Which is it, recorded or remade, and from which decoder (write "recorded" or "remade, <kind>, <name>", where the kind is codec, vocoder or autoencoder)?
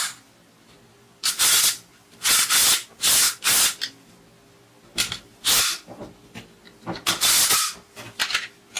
recorded